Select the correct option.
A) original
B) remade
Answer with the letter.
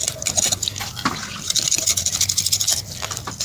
A